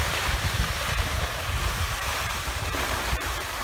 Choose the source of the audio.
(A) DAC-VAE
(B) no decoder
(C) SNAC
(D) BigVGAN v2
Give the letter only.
D